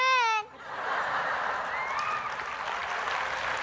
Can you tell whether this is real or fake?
real